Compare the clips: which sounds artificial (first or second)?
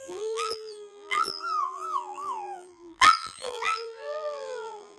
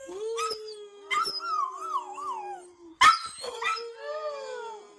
first